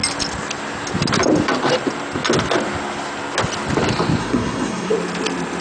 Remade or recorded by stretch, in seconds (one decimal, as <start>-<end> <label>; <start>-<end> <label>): 0.0-4.2 recorded; 4.2-4.9 remade; 4.9-5.6 recorded